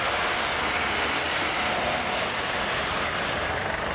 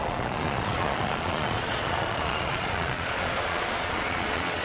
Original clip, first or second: first